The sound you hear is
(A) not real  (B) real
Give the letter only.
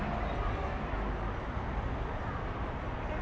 B